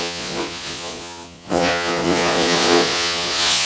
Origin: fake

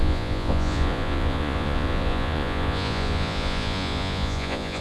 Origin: fake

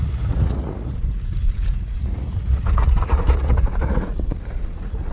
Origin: fake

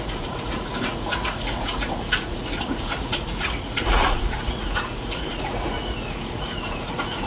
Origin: fake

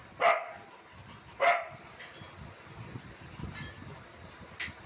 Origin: real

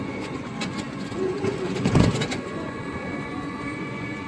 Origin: fake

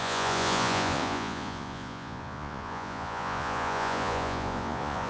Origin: fake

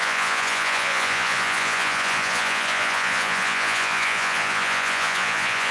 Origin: fake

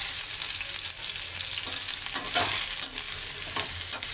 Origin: real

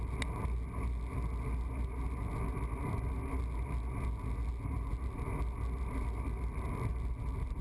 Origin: real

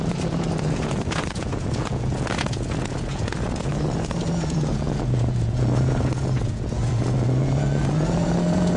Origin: fake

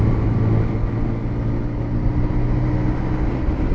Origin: real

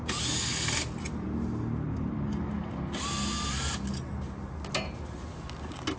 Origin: real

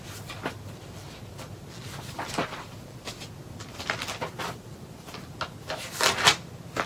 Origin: real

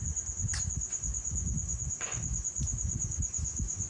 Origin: fake